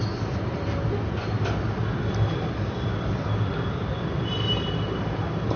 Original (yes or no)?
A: no